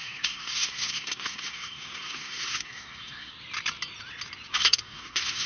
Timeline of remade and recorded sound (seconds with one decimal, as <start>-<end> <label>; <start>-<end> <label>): 0.0-3.3 remade; 3.3-4.5 recorded; 4.5-5.5 remade